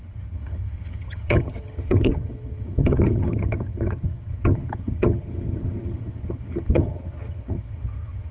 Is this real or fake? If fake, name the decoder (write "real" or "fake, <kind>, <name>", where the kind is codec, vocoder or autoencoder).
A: fake, vocoder, HiFi-GAN